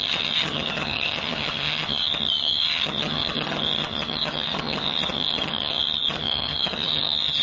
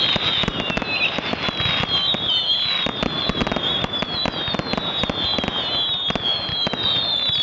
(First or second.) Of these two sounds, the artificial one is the first